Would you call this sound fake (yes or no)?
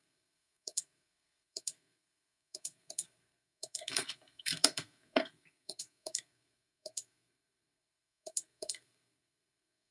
yes